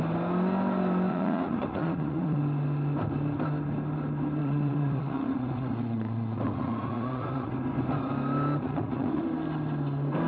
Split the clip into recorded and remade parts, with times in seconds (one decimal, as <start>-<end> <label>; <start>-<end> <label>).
0.0-1.1 recorded; 1.1-2.4 remade; 2.4-4.4 recorded; 4.4-7.5 remade; 7.5-8.6 recorded; 8.6-9.2 remade; 9.2-10.3 recorded